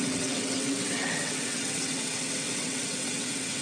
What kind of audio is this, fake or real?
fake